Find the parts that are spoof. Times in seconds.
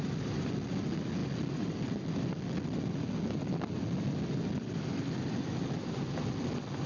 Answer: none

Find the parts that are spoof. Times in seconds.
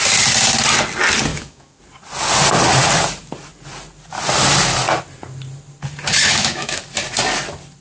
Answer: 1.3-1.8 (autoencoder, DAC-VAE); 6.2-6.8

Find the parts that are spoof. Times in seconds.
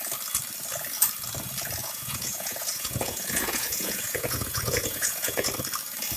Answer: 1.8-5.5 (vocoder, Vocos)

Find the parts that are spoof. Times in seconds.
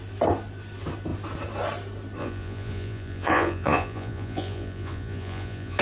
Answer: 2.2-5.8 (vocoder, Vocos)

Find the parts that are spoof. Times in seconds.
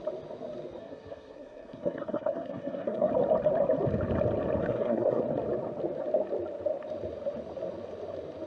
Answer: 0.8-3.1 (codec, SNAC); 4.6-5.2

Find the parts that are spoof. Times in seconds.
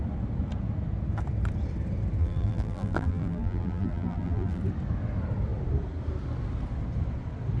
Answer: 2.2-4.6 (vocoder, BigVGAN v2)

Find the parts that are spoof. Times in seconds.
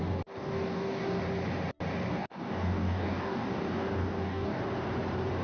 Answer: 0.4-1.2 (codec, DAC); 2.1-4.6